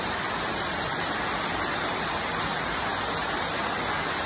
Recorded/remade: recorded